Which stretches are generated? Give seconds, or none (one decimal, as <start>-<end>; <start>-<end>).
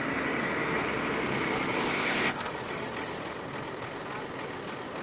1.8-2.5